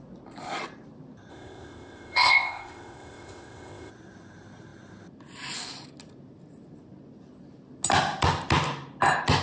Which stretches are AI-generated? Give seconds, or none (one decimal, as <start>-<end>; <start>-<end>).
1.3-3.9